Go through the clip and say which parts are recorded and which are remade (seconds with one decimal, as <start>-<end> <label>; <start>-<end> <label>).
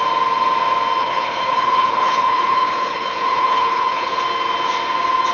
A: 0.0-1.0 recorded; 1.0-4.2 remade; 4.2-5.3 recorded